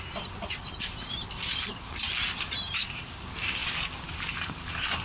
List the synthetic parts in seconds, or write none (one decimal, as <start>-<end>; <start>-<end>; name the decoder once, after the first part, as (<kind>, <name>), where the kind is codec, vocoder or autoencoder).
0.0-1.5 (vocoder, BigVGAN v2); 3.1-3.6; 4.2-5.0